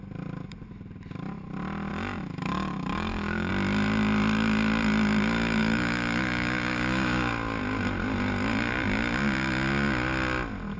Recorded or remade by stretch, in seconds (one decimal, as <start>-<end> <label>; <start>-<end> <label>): 0.0-1.9 recorded; 1.9-3.5 remade; 3.5-5.6 recorded; 5.6-7.3 remade; 7.3-10.8 recorded